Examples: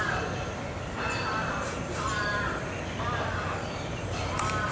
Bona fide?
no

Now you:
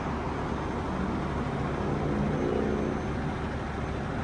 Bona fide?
yes